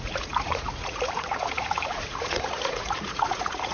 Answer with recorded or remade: remade